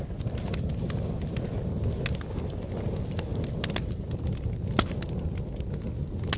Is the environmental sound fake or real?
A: real